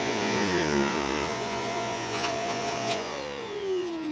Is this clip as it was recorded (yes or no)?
no